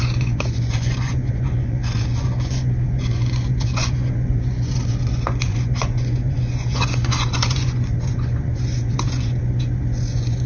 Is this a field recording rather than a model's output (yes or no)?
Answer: no